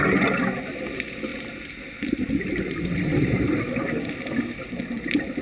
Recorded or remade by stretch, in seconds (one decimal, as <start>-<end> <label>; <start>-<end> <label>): 0.0-5.4 recorded